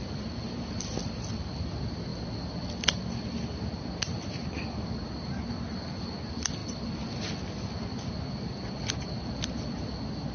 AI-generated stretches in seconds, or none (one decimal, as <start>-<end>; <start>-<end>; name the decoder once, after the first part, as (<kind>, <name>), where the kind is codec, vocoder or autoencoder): none